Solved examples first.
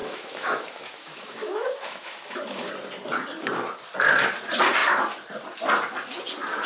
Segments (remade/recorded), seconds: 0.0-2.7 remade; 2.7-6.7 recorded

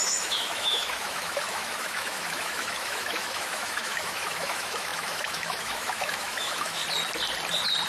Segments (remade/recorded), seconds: 0.0-6.8 remade; 6.8-7.9 recorded

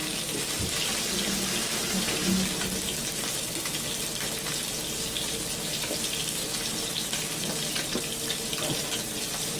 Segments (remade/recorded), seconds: 0.0-9.6 recorded

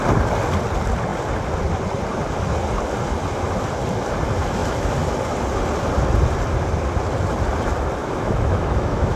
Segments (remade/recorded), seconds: 0.0-8.0 recorded; 8.0-9.2 remade

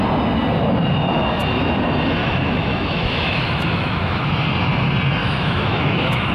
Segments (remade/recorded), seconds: 0.0-2.2 recorded; 2.2-4.3 remade; 4.3-5.2 recorded; 5.2-6.3 remade